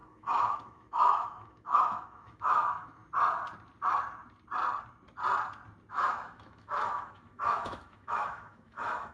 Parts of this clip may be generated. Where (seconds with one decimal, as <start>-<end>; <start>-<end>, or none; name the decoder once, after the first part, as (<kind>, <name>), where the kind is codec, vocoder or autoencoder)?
0.0-3.0 (autoencoder, DAC-VAE); 5.9-9.1